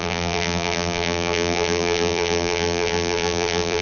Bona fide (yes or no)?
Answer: no